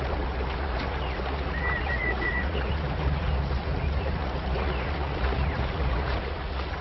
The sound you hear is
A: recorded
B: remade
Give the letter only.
B